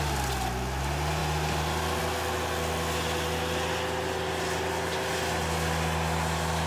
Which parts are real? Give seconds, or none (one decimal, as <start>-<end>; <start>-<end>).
0.0-6.7